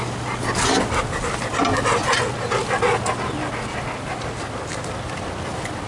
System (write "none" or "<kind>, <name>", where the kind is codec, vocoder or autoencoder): none